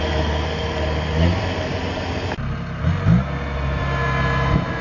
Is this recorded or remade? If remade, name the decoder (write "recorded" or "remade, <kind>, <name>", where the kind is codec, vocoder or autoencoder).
recorded